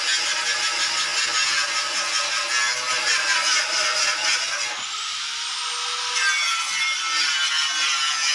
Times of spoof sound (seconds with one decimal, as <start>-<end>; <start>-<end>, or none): none